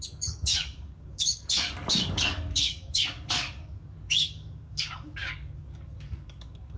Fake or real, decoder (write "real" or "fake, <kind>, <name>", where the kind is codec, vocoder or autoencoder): fake, codec, DAC